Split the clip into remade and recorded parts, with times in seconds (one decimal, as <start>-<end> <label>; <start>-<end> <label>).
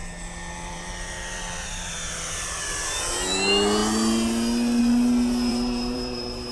0.0-2.6 remade; 2.6-5.5 recorded; 5.5-6.5 remade